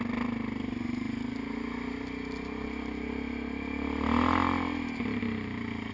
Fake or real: real